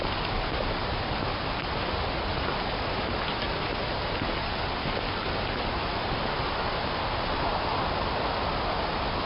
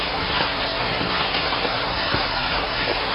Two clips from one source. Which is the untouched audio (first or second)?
first